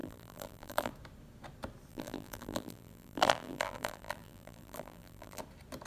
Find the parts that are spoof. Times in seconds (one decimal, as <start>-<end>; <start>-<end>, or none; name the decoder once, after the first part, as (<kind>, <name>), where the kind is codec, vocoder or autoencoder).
0.0-0.9 (vocoder, BigVGAN v2); 1.9-5.4